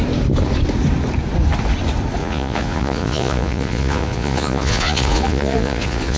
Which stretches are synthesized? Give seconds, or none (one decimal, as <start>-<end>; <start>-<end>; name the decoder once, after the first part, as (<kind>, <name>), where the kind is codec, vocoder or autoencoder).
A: 2.2-6.2 (vocoder, Vocos)